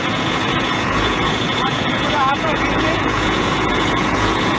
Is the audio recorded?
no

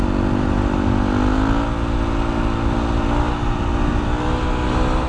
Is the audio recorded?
yes